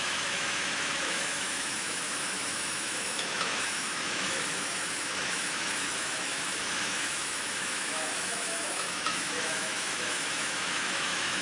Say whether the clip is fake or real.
fake